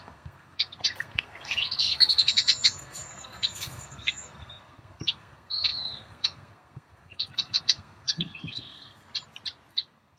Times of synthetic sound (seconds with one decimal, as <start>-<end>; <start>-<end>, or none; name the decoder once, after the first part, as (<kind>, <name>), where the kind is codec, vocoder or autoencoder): 0.0-9.1 (codec, SNAC); 9.7-10.2